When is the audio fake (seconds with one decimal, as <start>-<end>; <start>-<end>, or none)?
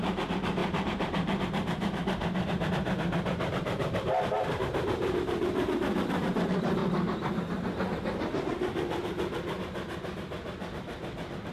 0.0-6.8